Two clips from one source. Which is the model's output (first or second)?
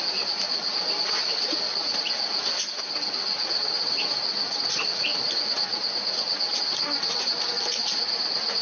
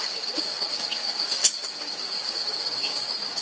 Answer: second